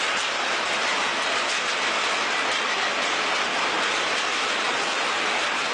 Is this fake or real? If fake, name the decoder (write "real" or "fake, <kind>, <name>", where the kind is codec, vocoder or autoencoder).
fake, vocoder, BigVGAN v2